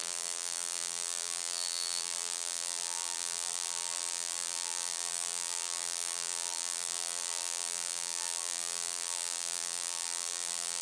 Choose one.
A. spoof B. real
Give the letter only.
A